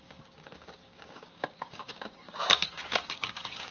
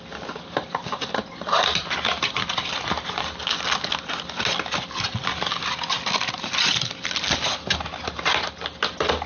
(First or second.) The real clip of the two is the second